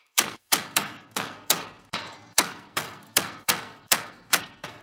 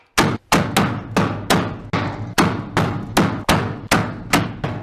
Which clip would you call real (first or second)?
second